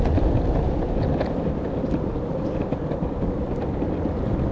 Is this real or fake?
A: real